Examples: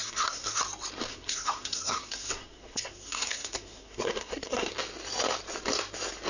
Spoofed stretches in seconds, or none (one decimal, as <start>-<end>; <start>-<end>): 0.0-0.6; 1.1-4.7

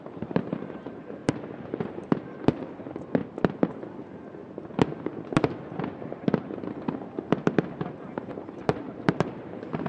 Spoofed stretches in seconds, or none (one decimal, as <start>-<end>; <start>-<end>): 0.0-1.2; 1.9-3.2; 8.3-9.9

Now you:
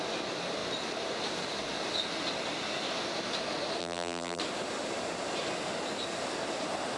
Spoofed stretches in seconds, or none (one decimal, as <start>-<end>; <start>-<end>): 3.8-4.4

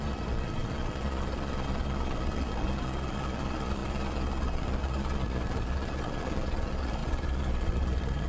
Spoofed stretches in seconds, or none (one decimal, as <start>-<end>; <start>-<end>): 0.0-8.3

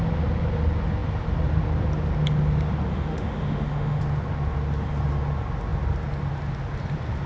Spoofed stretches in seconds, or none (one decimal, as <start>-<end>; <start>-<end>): 2.9-4.0

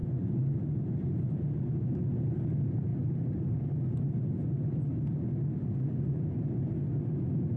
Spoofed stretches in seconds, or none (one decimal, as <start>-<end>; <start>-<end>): 0.0-0.8; 5.6-6.2